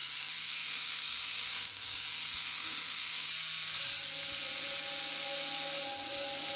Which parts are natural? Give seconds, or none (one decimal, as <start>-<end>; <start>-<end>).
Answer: 3.3-6.6